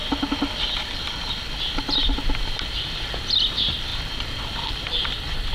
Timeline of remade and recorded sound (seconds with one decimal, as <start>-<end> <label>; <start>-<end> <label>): 0.0-5.5 recorded